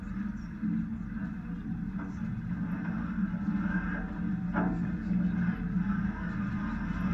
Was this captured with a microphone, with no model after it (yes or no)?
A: yes